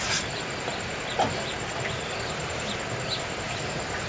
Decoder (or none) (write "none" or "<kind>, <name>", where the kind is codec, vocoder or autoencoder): none